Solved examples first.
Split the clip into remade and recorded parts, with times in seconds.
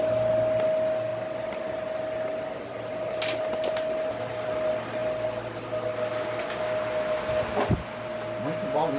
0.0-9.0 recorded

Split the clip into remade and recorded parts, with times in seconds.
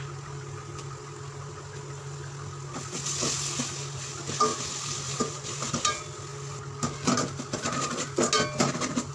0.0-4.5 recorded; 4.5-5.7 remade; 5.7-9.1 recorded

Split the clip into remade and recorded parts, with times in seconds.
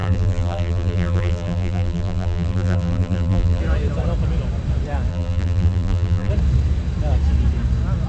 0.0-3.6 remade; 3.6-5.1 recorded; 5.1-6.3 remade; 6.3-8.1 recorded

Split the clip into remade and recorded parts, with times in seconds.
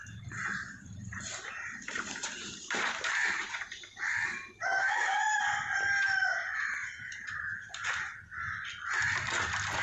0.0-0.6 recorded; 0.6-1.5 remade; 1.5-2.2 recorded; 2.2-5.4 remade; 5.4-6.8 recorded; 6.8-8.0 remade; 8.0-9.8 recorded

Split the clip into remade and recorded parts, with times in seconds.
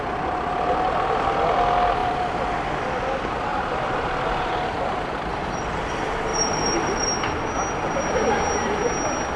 0.0-3.5 recorded; 3.5-5.5 remade; 5.5-6.3 recorded; 6.3-7.1 remade; 7.1-9.4 recorded